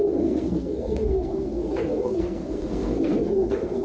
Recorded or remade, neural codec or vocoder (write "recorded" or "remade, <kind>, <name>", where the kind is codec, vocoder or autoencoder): remade, codec, SNAC